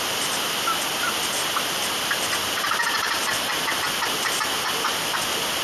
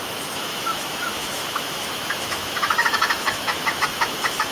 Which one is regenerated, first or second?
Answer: second